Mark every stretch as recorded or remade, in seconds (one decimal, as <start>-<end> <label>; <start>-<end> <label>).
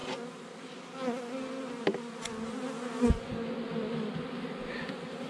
0.0-5.3 recorded